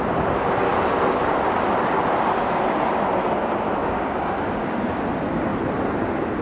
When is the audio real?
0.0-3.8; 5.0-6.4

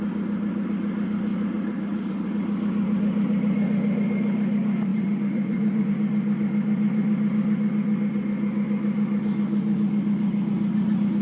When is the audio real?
0.0-1.3; 2.3-4.9; 5.9-11.2

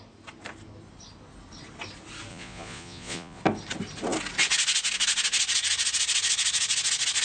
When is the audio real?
0.0-2.3; 3.4-7.2